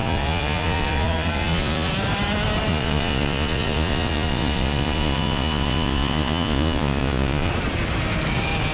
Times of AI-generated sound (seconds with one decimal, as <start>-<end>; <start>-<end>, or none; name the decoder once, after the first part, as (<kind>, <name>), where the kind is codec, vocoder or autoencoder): 0.0-1.9 (vocoder, Vocos); 2.7-7.5